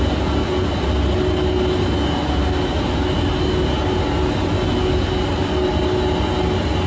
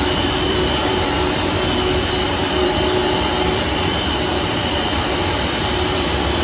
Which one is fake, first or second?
second